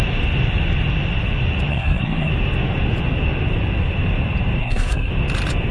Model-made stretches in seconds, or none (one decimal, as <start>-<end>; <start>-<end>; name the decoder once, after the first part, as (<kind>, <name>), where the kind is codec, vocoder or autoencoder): 1.7-2.3 (codec, SNAC); 4.6-5.1